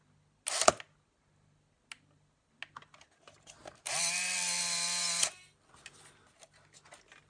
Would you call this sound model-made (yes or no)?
no